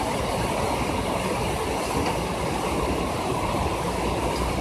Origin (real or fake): real